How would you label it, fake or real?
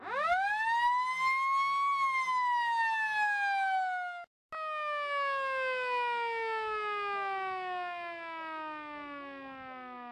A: real